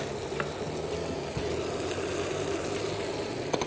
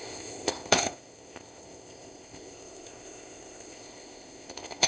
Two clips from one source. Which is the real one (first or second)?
first